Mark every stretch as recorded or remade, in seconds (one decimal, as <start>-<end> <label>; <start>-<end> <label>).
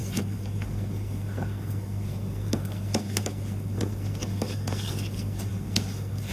0.0-6.3 remade